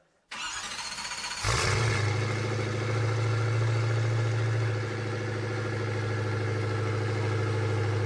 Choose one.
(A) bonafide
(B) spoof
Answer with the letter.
A